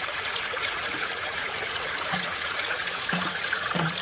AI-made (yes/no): yes